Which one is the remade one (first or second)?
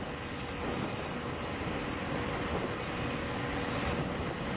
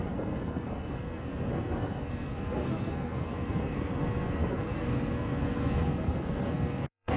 second